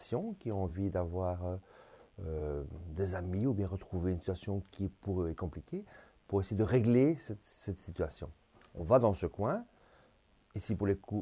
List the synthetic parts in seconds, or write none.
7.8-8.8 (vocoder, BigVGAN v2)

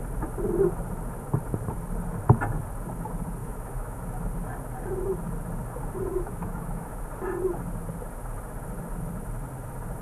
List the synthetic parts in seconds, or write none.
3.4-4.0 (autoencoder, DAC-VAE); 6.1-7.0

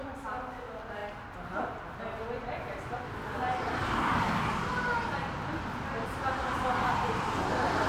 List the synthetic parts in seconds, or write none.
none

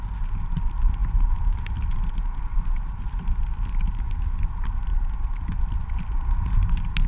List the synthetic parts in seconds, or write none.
2.5-3.2 (vocoder, BigVGAN v2); 4.9-5.6

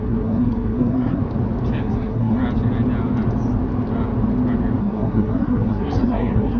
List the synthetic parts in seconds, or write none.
0.0-1.2 (codec, SNAC); 1.8-2.4; 4.8-6.6